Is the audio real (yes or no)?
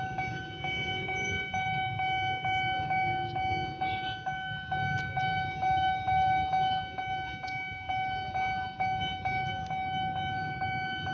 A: yes